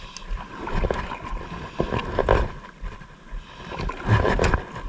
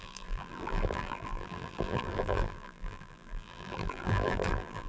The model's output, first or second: second